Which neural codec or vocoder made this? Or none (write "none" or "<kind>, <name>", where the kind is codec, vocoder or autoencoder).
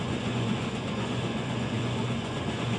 vocoder, Vocos